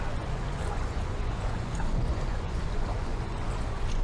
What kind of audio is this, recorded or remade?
remade